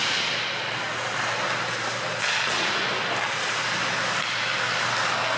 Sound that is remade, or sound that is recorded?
recorded